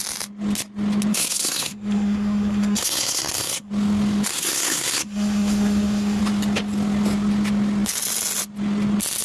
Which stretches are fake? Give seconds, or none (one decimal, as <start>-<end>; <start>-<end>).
1.1-3.7; 4.3-6.2